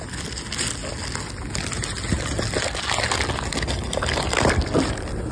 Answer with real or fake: real